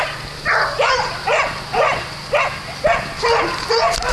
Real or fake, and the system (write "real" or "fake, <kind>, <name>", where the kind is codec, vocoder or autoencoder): real